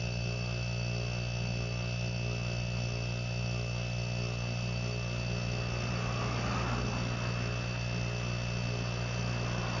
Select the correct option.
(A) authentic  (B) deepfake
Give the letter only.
A